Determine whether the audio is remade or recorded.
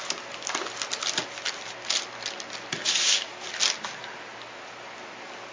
recorded